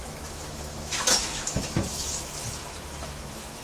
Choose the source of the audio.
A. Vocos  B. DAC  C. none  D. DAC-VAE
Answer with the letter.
D